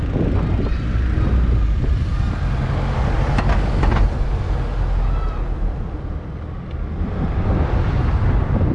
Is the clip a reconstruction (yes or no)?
no